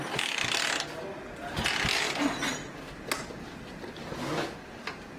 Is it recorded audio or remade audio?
recorded